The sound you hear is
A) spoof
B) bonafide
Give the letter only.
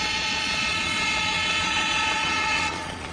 A